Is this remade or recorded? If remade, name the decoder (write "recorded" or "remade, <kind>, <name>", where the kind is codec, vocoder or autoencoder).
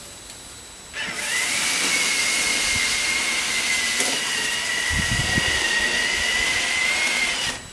recorded